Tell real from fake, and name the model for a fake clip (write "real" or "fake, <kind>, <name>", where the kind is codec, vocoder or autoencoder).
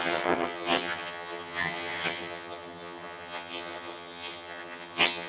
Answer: fake, vocoder, HiFi-GAN